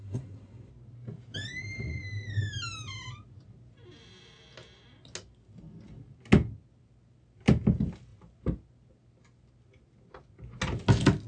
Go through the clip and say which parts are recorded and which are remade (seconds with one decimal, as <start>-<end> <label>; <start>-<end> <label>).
0.0-0.7 remade; 0.7-11.3 recorded